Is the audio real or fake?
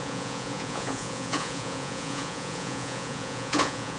fake